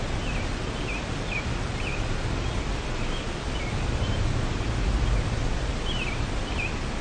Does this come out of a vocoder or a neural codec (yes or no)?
no